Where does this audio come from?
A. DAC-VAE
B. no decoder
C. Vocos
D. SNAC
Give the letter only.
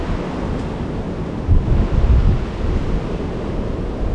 B